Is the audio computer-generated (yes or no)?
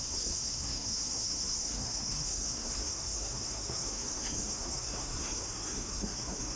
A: yes